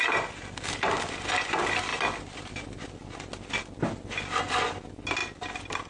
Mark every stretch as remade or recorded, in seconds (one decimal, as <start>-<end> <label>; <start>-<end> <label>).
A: 0.0-5.9 recorded